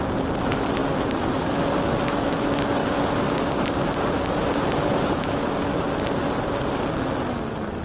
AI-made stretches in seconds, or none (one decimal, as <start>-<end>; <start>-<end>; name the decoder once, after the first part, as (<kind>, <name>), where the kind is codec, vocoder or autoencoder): 0.8-1.5 (vocoder, BigVGAN v2); 2.8-5.4